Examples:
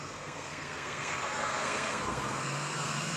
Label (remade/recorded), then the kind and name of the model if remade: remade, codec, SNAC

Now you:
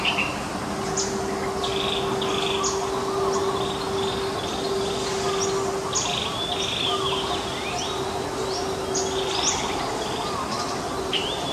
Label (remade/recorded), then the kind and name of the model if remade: recorded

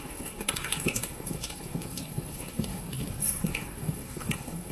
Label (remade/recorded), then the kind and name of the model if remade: remade, codec, SNAC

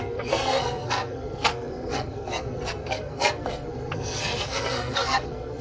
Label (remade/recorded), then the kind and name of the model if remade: remade, codec, SNAC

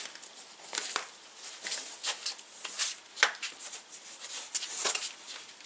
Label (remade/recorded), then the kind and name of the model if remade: recorded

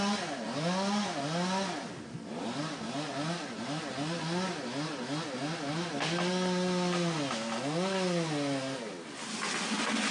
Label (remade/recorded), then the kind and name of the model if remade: recorded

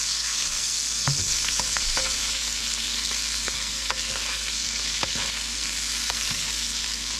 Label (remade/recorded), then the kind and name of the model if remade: remade, codec, SNAC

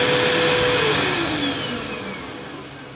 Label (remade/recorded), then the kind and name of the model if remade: recorded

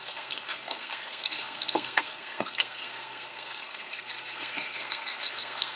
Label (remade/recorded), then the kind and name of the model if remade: remade, codec, SNAC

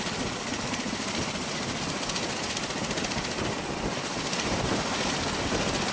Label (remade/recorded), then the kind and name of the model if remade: recorded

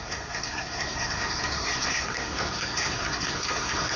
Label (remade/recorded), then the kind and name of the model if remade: remade, codec, SNAC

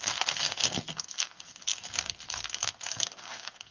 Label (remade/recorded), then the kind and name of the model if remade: remade, codec, SNAC